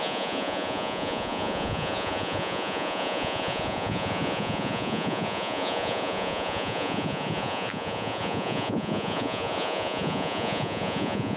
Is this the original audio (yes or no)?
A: no